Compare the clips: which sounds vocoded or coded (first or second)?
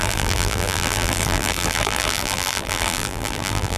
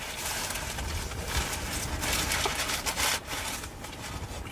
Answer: first